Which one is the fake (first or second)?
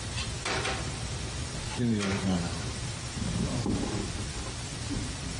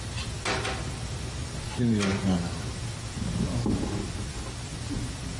first